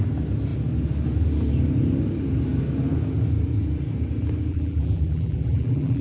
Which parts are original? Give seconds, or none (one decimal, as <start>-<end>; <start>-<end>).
0.0-4.5